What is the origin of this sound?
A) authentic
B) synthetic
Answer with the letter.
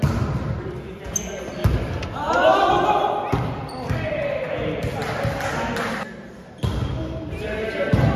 A